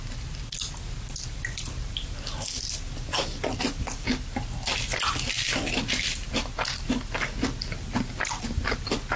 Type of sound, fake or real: real